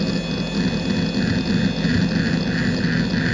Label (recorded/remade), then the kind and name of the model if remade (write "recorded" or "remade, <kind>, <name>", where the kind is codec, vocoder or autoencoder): recorded